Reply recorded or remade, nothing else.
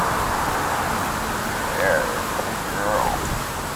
recorded